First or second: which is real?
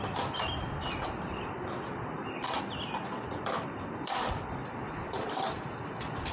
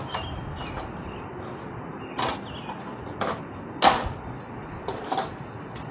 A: second